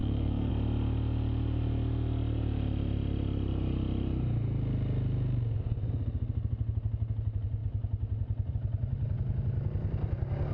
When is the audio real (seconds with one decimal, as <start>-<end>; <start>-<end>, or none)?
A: 0.5-10.5